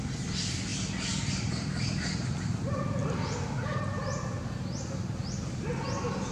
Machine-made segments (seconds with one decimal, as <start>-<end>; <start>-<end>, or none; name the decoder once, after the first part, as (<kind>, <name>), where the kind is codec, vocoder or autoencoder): 0.0-0.7 (vocoder, BigVGAN v2); 2.6-3.0; 5.2-6.3